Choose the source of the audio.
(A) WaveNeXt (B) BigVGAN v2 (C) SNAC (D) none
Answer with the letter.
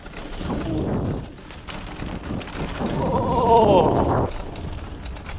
D